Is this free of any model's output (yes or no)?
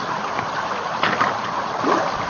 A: yes